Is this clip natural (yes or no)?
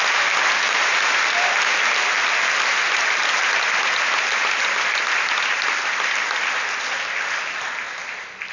yes